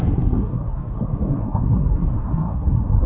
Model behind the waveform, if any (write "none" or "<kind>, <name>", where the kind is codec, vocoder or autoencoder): codec, SNAC